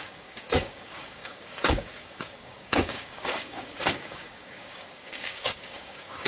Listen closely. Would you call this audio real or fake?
fake